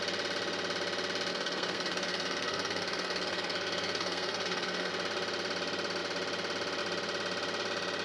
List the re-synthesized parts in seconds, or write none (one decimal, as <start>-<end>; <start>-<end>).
1.3-4.9